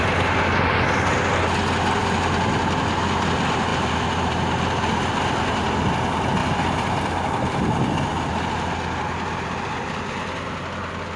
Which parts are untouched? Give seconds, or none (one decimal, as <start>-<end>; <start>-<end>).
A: 0.0-3.7; 5.1-6.4; 8.5-11.2